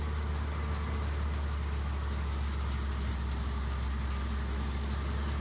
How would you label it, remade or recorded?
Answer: recorded